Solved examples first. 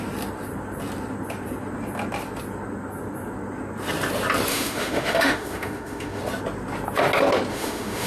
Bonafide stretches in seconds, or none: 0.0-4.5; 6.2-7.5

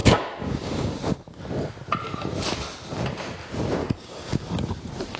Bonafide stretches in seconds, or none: 1.0-3.8; 4.4-5.2